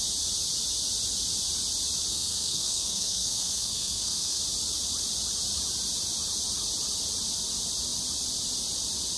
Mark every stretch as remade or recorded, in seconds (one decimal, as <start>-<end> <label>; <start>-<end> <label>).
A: 0.0-2.1 recorded; 2.1-4.4 remade; 4.4-9.2 recorded